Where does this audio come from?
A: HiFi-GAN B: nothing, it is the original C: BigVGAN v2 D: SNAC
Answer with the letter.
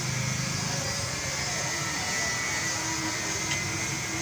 B